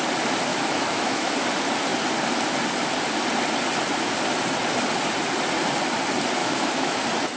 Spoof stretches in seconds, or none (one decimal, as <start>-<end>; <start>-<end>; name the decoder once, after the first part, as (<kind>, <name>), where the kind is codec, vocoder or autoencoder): 0.5-1.3 (autoencoder, DAC-VAE); 6.4-7.0